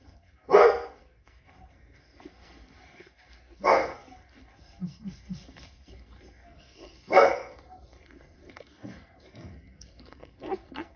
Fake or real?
fake